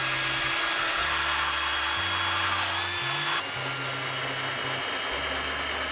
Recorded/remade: recorded